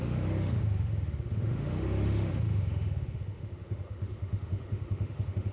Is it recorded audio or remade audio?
remade